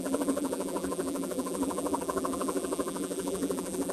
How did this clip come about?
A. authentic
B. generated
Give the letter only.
B